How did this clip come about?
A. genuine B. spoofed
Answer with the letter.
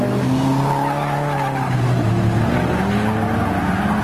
A